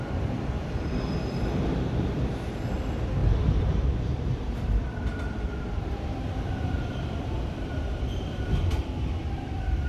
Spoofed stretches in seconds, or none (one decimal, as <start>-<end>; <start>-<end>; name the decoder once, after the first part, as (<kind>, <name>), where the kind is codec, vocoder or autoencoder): 0.0-9.9 (vocoder, BigVGAN v2)